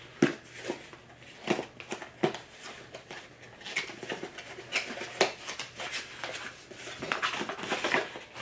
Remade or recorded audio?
recorded